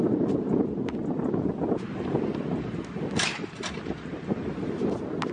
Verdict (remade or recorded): recorded